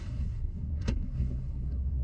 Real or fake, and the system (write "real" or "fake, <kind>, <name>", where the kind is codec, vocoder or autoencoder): fake, codec, SNAC